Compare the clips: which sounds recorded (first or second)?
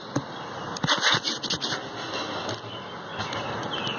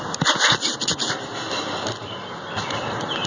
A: first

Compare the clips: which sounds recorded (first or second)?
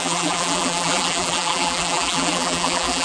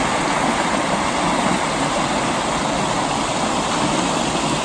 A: second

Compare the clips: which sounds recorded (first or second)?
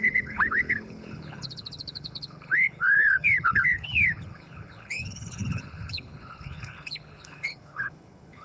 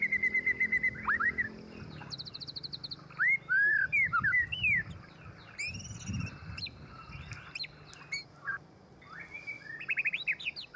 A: second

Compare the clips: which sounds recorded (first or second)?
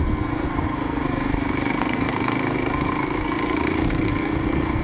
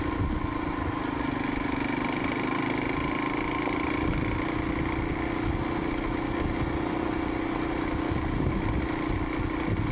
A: second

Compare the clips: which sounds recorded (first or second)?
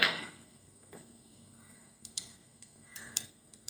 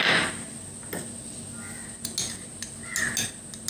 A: second